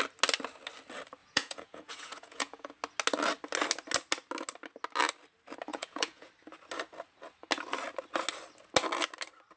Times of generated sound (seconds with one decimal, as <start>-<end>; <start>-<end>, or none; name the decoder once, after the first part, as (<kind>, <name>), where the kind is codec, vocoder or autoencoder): 1.2-2.7 (vocoder, Vocos); 5.7-6.3